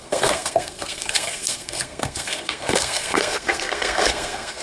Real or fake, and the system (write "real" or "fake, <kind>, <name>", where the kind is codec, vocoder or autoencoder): fake, codec, SNAC